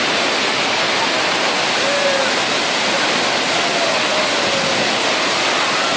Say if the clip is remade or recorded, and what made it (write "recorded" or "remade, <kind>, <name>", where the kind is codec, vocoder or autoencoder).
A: recorded